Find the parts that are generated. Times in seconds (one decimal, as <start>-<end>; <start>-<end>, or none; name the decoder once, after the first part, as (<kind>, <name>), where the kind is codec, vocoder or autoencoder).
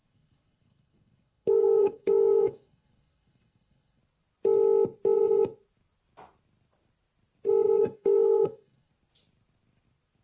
0.0-4.0 (codec, SNAC); 7.8-8.9